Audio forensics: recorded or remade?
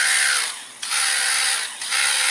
recorded